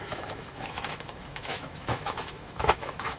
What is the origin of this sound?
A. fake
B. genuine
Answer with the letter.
A